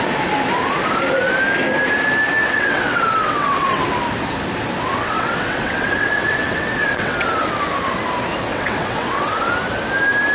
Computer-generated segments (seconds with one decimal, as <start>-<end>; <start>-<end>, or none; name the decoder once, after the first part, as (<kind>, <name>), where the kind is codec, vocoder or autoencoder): 2.4-3.8 (vocoder, WaveNeXt); 5.0-7.4; 8.5-9.5